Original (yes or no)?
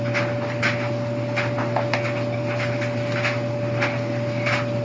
yes